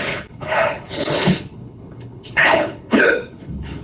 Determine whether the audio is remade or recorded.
remade